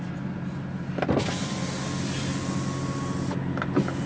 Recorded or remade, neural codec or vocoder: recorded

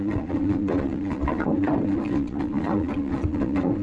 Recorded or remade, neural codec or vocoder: remade, vocoder, Vocos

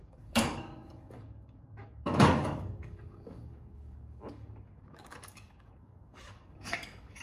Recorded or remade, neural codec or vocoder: remade, codec, DAC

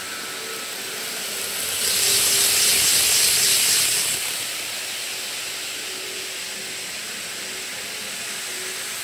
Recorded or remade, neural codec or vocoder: recorded